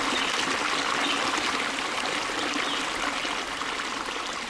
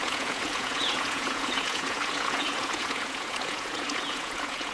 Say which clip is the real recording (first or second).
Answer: first